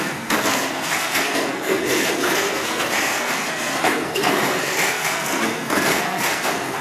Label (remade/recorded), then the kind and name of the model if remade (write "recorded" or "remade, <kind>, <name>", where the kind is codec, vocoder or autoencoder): remade, codec, SNAC